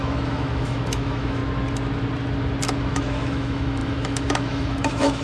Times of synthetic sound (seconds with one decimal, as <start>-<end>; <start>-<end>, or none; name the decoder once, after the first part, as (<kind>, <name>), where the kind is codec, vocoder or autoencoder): 0.0-1.4 (autoencoder, DAC-VAE); 2.8-5.2